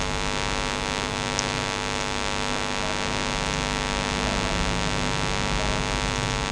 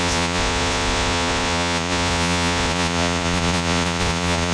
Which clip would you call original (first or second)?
first